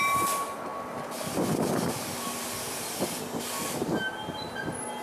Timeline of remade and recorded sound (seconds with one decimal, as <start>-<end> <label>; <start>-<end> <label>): 0.0-5.0 recorded